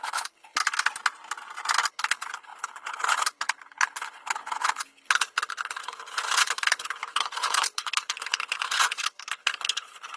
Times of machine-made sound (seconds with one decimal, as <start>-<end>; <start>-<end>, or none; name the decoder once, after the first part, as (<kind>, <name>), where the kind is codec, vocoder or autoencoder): 0.0-0.6 (codec, HILCodec); 1.9-10.2